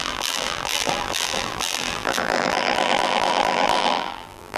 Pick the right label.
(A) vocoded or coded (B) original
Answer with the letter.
A